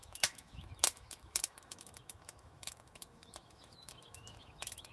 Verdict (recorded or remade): remade